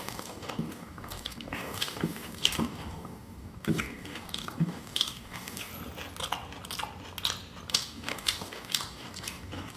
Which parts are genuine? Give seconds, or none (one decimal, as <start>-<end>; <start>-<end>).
5.7-7.7